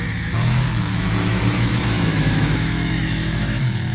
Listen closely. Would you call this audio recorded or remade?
remade